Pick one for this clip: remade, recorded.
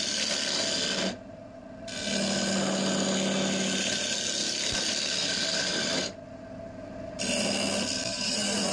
recorded